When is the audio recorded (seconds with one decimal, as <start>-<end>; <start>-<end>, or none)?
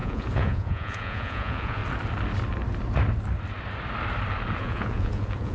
1.8-4.6